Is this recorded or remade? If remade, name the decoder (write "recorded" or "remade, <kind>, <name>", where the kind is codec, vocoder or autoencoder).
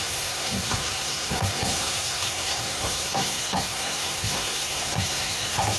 remade, codec, SNAC